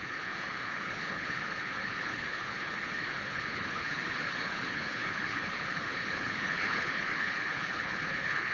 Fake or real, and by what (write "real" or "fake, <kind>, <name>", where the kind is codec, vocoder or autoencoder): fake, codec, HILCodec